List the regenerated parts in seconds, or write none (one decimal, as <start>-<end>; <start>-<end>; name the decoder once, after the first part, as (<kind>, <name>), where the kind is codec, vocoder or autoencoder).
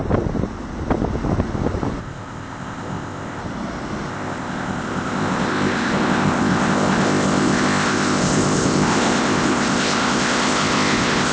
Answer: 2.0-3.4 (codec, ZipCodec); 4.1-11.3